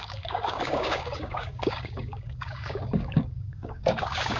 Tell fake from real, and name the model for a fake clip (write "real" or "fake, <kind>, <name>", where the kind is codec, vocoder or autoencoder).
fake, codec, DAC